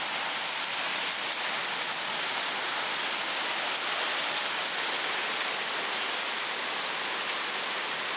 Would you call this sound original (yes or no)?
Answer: yes